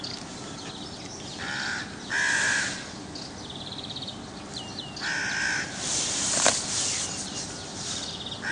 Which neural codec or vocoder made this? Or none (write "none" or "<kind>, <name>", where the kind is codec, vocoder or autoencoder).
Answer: none